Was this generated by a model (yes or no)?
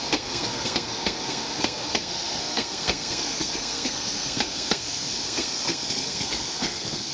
yes